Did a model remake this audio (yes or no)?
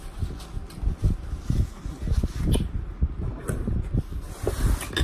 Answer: no